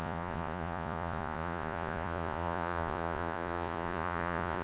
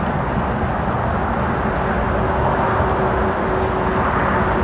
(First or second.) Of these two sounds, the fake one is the first